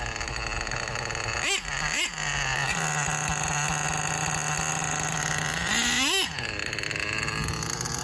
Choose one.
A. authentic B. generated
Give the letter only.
A